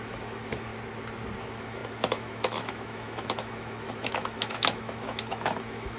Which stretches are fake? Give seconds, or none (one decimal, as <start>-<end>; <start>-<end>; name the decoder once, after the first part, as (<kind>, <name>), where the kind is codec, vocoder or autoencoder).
0.0-0.7 (autoencoder, DAC-VAE); 1.4-6.0